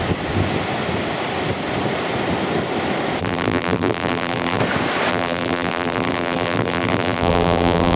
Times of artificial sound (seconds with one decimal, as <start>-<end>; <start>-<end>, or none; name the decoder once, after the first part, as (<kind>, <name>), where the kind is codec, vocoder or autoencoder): 3.2-4.6 (vocoder, BigVGAN v2); 5.1-8.0